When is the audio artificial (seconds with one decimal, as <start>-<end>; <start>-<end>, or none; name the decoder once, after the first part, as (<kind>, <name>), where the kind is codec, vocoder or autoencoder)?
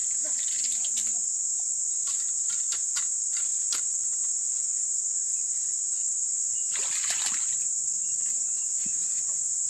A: 0.0-9.7 (vocoder, BigVGAN v2)